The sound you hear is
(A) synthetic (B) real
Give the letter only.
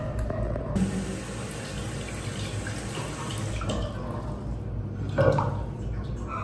B